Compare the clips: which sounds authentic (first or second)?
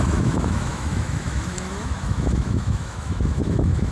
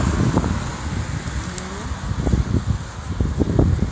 second